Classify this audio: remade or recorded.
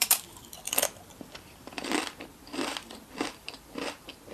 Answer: remade